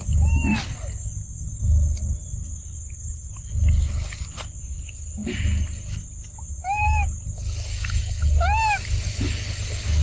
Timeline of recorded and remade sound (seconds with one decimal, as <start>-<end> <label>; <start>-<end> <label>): 0.0-10.0 recorded